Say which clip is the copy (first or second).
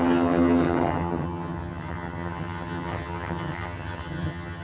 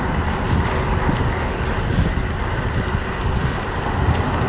first